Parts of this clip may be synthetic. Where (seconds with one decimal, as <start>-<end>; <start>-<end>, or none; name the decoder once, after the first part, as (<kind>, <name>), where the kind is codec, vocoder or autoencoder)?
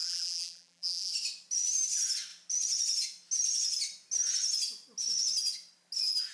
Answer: 0.0-1.1 (vocoder, BigVGAN v2)